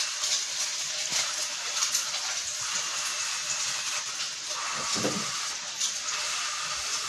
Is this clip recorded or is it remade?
recorded